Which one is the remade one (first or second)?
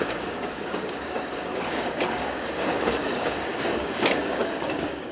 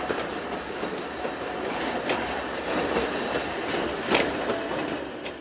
first